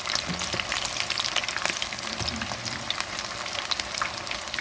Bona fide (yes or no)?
yes